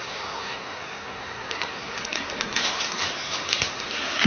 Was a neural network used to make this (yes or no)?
yes